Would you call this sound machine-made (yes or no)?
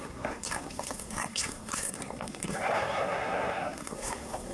yes